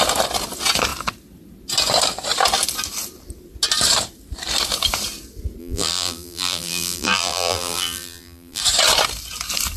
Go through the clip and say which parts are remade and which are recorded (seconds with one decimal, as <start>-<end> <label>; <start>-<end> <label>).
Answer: 0.0-5.6 recorded; 5.6-8.6 remade; 8.6-9.8 recorded